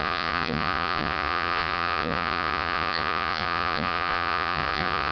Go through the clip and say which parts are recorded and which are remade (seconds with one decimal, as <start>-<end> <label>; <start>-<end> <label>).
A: 0.0-5.1 remade